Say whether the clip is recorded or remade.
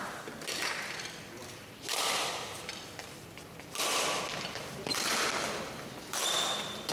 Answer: remade